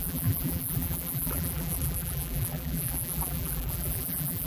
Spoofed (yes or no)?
yes